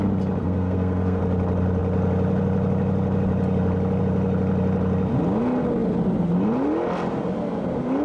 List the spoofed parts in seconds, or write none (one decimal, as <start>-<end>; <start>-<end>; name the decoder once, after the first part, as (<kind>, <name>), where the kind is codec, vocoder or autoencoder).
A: 0.4-1.2 (codec, SNAC)